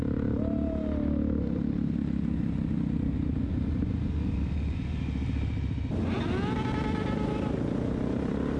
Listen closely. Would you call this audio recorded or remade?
recorded